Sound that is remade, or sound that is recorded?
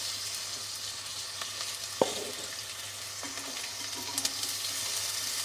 recorded